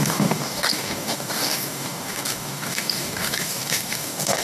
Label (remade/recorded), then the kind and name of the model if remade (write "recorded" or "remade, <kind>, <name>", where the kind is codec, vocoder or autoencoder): remade, codec, DAC